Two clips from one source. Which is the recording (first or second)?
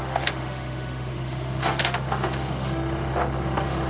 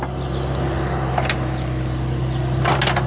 second